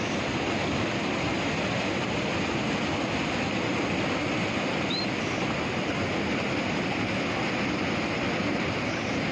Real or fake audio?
real